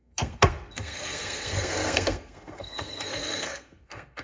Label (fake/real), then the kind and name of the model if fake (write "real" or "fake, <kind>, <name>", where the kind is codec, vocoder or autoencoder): fake, codec, SNAC